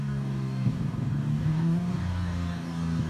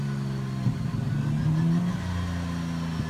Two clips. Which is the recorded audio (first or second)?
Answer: second